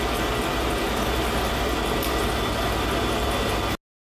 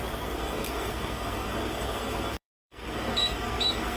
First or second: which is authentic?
first